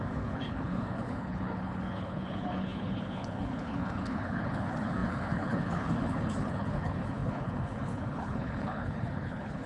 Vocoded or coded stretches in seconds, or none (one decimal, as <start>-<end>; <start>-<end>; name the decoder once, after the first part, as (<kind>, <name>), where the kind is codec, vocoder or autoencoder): 0.0-9.7 (codec, HILCodec)